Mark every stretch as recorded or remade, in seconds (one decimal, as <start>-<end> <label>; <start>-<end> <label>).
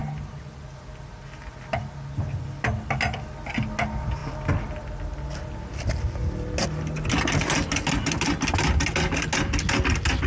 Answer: 0.0-10.3 recorded